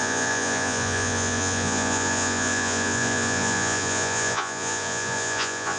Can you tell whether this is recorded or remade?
remade